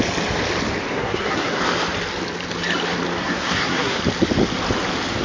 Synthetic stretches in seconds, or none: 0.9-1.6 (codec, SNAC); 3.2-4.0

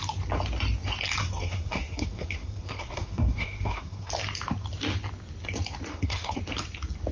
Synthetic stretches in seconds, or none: 1.2-4.1 (codec, SNAC); 5.9-6.4